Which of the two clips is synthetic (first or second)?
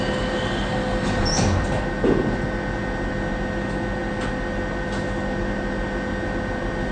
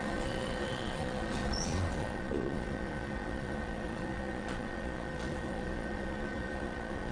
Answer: second